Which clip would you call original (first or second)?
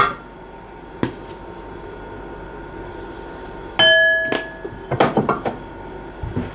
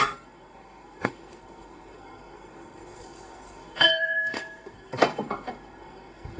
first